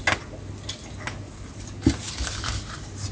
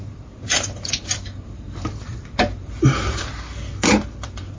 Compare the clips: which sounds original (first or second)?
first